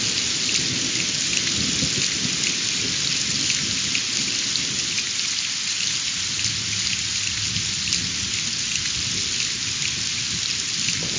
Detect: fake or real real